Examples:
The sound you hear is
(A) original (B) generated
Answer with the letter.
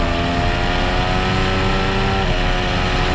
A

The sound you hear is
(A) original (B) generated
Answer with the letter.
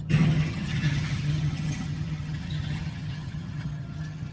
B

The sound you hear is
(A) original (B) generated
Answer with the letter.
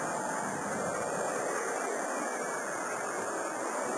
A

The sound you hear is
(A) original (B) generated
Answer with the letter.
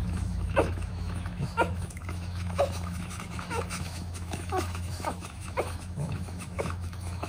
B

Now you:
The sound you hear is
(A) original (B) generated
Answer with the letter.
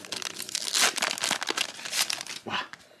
A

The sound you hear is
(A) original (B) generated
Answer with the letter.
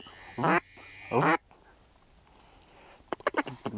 A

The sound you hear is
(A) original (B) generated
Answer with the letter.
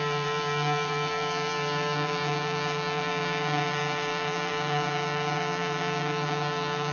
B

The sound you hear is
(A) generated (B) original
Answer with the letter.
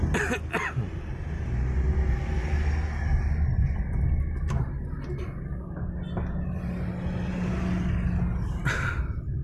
B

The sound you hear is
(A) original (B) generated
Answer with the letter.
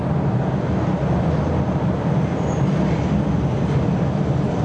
A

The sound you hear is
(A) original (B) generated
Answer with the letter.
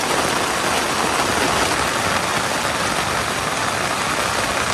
A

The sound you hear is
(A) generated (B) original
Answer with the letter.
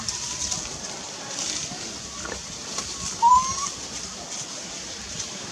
A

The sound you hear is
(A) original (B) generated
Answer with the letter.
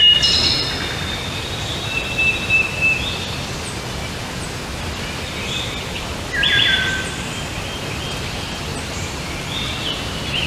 A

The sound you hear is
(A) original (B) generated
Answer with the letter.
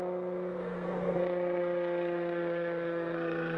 B